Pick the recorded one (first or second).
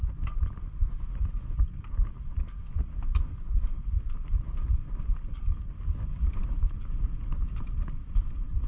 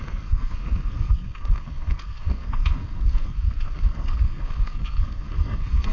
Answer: first